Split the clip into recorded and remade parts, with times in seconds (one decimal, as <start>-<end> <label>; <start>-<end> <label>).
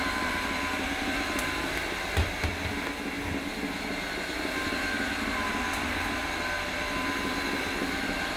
0.0-8.4 recorded